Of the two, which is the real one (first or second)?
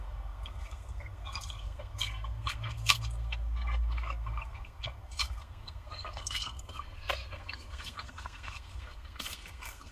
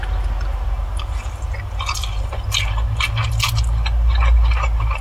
second